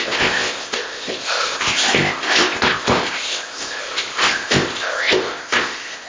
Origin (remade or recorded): remade